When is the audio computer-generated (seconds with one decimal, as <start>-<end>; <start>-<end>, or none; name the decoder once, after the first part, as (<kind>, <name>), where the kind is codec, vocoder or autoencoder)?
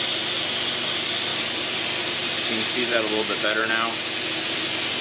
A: 1.3-2.5 (vocoder, BigVGAN v2); 2.9-3.7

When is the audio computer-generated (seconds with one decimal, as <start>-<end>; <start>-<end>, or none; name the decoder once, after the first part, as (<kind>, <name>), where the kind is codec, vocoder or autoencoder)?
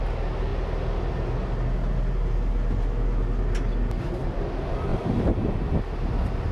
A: 4.9-5.7 (vocoder, BigVGAN v2)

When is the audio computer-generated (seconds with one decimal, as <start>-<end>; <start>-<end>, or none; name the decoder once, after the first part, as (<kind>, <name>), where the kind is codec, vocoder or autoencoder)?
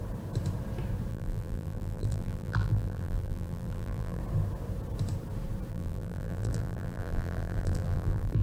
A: 1.1-4.2 (vocoder, BigVGAN v2); 5.7-8.4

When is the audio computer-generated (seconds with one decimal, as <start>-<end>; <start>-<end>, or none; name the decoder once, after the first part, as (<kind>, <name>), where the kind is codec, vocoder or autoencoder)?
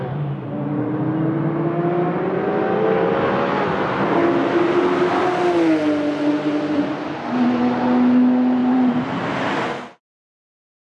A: 8.6-9.3 (vocoder, BigVGAN v2)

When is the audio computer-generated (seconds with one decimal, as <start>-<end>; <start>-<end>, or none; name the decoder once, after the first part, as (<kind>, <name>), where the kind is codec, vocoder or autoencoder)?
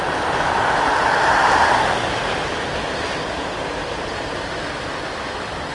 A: 0.0-2.7 (vocoder, BigVGAN v2); 4.9-5.7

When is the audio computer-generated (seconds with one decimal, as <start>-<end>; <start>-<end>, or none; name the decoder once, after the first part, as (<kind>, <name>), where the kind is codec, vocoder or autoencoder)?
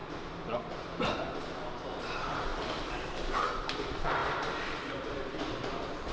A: 1.7-6.1 (vocoder, BigVGAN v2)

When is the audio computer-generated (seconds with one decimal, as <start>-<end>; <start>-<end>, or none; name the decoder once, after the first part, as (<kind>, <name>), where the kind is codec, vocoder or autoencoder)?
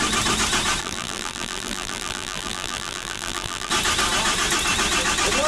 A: 0.8-3.7 (vocoder, BigVGAN v2)